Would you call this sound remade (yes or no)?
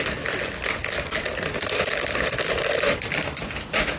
yes